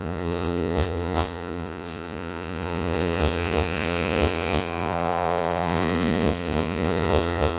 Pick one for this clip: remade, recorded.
remade